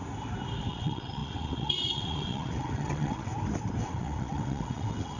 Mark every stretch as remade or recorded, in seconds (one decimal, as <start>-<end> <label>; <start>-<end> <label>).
0.0-0.7 recorded; 0.7-3.3 remade; 3.3-3.8 recorded; 3.8-5.2 remade